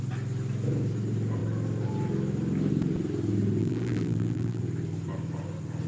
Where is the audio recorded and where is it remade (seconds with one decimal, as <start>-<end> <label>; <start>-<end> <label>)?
0.0-3.6 recorded; 3.6-4.6 remade; 4.6-5.9 recorded